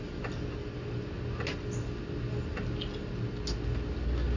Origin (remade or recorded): recorded